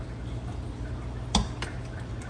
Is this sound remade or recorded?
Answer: recorded